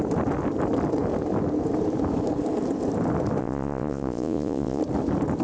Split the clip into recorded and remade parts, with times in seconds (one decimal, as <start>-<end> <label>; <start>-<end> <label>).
0.0-3.4 recorded; 3.4-4.8 remade; 4.8-5.4 recorded

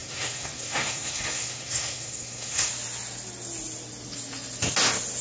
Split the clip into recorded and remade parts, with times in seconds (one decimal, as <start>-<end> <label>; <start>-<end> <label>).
0.0-2.7 remade; 2.7-5.2 recorded

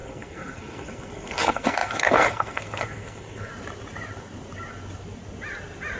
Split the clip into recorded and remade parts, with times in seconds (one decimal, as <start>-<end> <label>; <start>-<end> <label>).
0.0-3.5 remade; 3.5-6.0 recorded

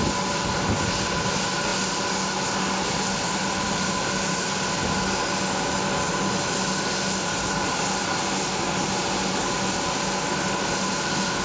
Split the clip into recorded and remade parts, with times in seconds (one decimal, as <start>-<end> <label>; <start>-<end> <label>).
0.0-11.4 recorded